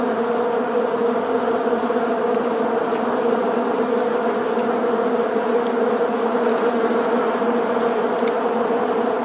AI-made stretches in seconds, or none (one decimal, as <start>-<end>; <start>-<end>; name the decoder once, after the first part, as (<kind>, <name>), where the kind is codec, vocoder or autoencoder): none